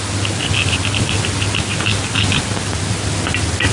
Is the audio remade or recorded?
recorded